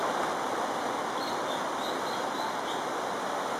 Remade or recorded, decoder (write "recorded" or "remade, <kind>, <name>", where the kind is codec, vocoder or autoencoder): recorded